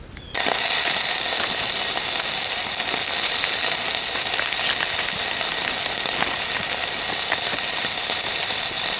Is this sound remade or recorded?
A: recorded